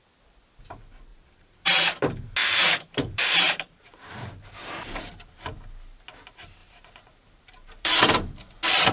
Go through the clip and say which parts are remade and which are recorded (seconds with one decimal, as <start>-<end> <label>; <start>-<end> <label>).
0.0-1.1 recorded; 1.1-2.0 remade; 2.0-2.4 recorded; 2.4-5.4 remade; 5.4-6.6 recorded; 6.6-8.0 remade; 8.0-8.9 recorded